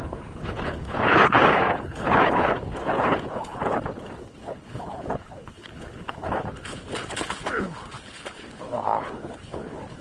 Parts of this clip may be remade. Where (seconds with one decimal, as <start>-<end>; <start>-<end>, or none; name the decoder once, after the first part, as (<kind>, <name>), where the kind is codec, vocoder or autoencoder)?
0.0-10.0 (codec, HILCodec)